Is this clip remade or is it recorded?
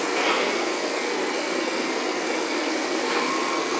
remade